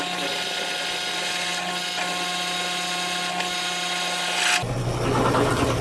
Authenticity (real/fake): real